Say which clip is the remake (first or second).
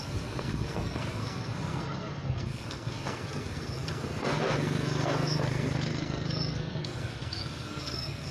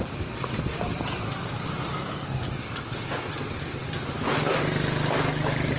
first